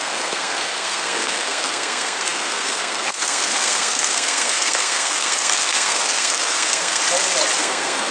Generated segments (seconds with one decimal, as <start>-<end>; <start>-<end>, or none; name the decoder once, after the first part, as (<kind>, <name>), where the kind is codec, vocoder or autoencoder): 0.0-7.0 (codec, SNAC); 7.6-8.1